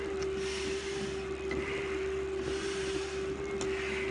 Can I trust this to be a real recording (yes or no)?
yes